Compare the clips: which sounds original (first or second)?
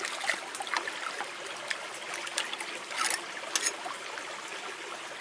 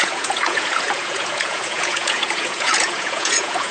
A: first